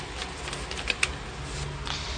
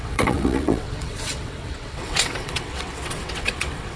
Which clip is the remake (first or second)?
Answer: second